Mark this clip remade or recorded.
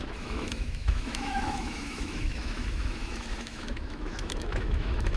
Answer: remade